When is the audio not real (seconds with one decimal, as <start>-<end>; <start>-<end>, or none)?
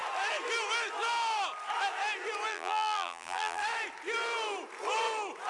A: 2.5-3.6